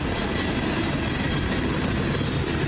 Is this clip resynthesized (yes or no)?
no